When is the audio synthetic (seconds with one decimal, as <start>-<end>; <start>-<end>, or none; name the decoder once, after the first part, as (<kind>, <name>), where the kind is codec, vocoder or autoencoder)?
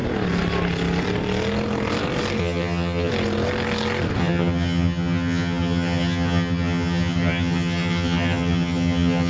2.4-3.1 (vocoder, HiFi-GAN); 4.2-9.3